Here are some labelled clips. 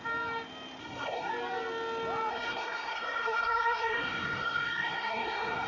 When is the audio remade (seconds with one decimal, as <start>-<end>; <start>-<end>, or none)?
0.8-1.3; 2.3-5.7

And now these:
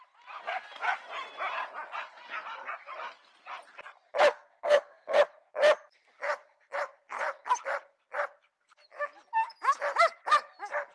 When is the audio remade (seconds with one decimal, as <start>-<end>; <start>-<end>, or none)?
4.3-5.2

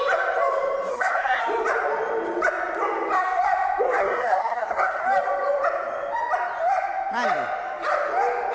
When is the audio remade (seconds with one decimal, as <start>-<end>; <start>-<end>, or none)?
0.9-1.4; 4.0-5.0

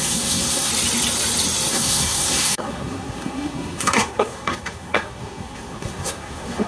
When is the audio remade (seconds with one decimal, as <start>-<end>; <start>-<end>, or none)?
0.0-0.7; 1.7-6.7

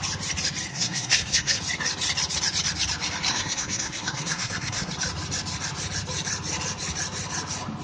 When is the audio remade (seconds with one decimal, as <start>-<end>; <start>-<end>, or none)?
0.7-1.6; 3.3-4.9

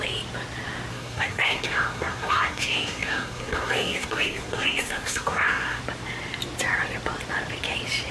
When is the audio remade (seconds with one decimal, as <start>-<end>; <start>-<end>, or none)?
0.9-5.8

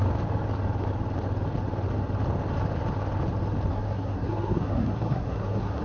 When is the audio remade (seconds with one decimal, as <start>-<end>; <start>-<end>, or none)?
3.7-5.8